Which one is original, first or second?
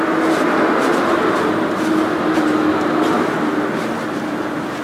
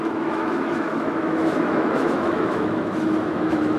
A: first